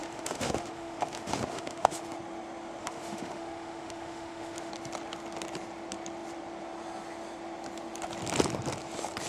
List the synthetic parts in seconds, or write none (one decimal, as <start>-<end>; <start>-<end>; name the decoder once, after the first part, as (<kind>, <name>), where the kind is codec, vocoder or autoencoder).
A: 0.0-2.1 (autoencoder, DAC-VAE); 2.8-4.7